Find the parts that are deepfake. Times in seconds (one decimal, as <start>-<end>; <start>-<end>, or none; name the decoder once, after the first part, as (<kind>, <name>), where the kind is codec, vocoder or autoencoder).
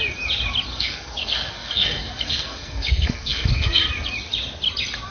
0.7-3.8 (codec, SNAC)